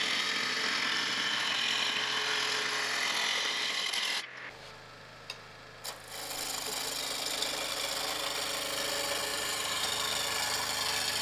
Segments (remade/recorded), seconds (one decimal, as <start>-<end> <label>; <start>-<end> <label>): 0.0-9.3 recorded; 9.3-9.9 remade; 9.9-11.2 recorded